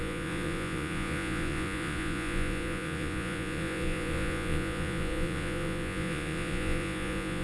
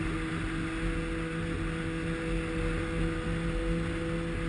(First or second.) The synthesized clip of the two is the first